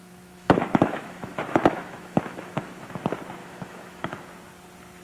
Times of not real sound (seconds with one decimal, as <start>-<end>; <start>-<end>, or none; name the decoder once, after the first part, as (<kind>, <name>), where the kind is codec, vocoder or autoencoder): 0.0-3.0 (autoencoder, DAC-VAE); 3.4-4.3